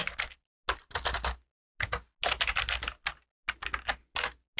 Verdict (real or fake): real